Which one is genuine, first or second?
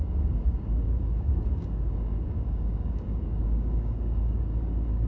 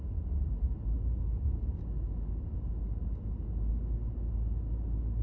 second